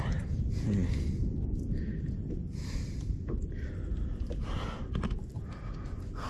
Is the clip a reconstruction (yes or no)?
no